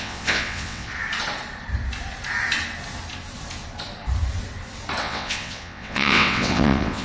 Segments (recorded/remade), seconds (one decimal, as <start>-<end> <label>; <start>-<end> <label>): 0.0-0.9 remade; 0.9-5.0 recorded; 5.0-7.0 remade